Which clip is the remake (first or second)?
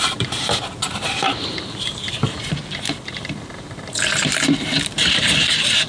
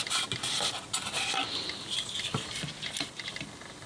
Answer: first